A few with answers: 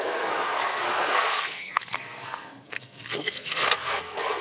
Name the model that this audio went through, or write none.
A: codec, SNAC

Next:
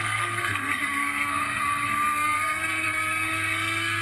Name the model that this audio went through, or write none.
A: codec, SNAC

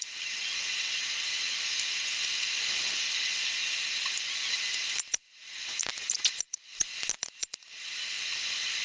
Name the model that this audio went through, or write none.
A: none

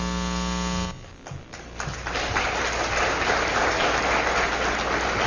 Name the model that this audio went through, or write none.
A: none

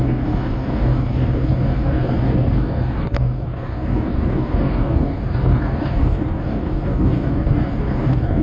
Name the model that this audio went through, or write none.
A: codec, DAC